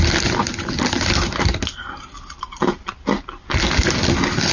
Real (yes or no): yes